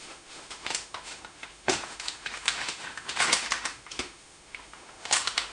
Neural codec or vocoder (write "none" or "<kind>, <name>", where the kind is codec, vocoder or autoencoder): autoencoder, DAC-VAE